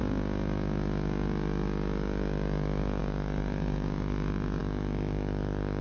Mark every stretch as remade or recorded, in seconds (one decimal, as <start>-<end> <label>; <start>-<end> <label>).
0.0-3.0 recorded; 3.0-4.6 remade; 4.6-5.8 recorded